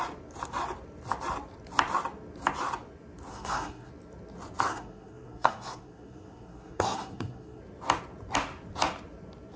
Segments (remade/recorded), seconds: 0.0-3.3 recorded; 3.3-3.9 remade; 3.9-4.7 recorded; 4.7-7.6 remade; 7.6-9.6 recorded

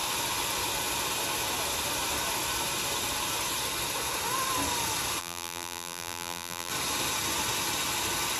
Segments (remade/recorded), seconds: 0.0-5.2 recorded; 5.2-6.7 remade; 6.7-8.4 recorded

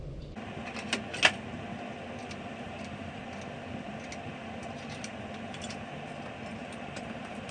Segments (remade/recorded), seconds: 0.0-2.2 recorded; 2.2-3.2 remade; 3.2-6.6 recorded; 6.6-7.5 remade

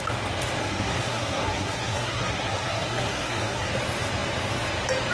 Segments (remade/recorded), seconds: 0.0-0.6 recorded; 0.6-3.7 remade; 3.7-5.1 recorded

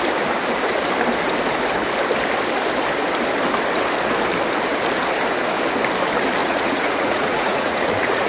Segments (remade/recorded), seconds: 0.0-6.4 recorded; 6.4-8.3 remade

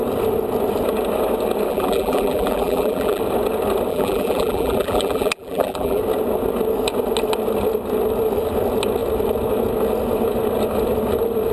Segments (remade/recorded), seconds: 0.0-1.7 recorded; 1.7-3.2 remade; 3.2-3.9 recorded; 3.9-6.0 remade; 6.0-11.5 recorded

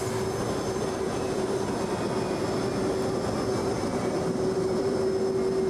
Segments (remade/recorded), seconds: 0.0-3.6 recorded; 3.6-5.0 remade; 5.0-5.7 recorded

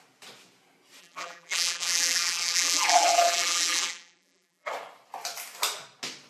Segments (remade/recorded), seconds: 0.0-1.0 recorded; 1.0-4.7 remade; 4.7-6.3 recorded